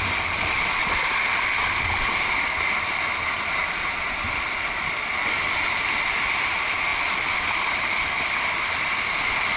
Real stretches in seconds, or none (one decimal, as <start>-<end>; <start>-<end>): 0.0-9.6